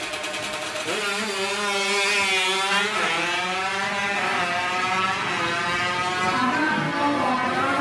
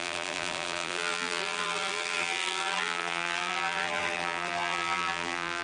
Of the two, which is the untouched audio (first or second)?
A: first